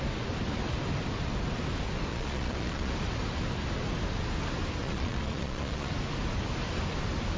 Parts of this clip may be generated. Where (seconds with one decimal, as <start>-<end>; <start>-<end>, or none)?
2.1-2.9; 4.8-5.9

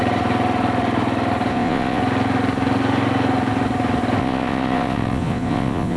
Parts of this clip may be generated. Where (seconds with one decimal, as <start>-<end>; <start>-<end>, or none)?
1.5-2.0; 4.2-6.0

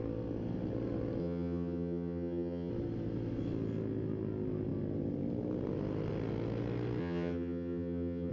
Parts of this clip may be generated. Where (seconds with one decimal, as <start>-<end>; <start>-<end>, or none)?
1.2-2.7; 7.0-8.3

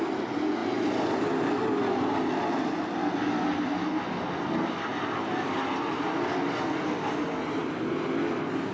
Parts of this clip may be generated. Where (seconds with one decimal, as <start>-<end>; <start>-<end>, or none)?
none

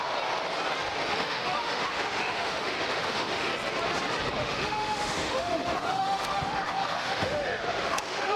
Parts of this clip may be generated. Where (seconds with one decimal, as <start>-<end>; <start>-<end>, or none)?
1.1-3.5; 4.4-8.4

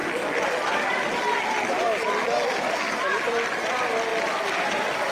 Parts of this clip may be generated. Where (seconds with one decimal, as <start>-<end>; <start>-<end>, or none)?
none